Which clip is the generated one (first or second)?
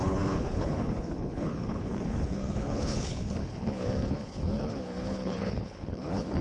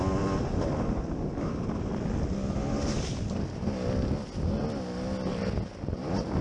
first